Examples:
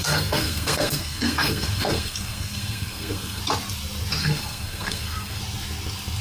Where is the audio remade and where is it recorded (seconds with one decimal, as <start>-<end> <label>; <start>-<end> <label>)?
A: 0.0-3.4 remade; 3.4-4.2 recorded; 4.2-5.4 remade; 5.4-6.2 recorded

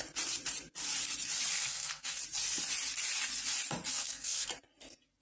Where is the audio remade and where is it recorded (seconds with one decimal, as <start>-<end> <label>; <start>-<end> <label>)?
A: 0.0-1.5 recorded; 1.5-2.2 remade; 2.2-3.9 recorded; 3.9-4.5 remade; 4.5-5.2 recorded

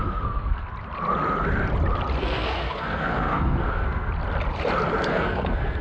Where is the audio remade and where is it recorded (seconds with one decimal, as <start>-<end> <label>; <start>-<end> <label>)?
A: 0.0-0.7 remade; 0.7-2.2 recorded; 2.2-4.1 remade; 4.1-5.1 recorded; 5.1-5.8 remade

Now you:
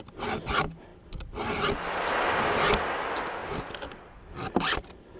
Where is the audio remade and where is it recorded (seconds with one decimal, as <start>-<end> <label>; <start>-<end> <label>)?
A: 0.0-5.2 recorded

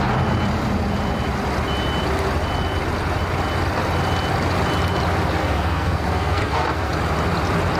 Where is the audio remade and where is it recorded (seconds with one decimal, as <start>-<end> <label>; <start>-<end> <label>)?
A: 0.0-5.4 recorded; 5.4-6.9 remade; 6.9-7.8 recorded